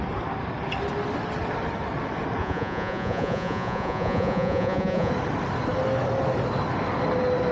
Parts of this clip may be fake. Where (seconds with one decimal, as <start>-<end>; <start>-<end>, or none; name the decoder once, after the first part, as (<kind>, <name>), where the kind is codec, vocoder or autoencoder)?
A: 2.4-5.1 (vocoder, Vocos)